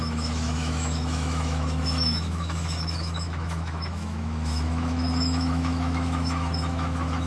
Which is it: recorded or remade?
remade